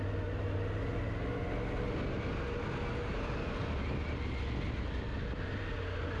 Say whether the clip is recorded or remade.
recorded